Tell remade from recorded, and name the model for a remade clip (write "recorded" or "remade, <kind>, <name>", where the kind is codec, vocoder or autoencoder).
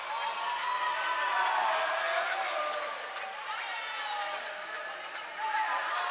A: recorded